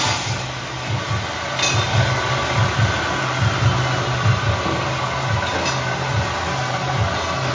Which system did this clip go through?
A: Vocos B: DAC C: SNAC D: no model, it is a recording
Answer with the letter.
D